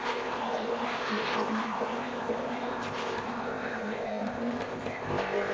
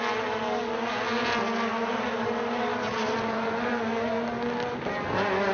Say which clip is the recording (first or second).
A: second